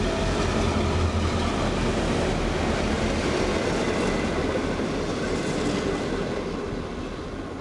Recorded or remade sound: recorded